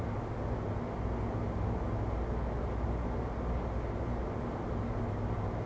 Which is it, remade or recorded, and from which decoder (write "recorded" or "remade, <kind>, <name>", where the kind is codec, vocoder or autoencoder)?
recorded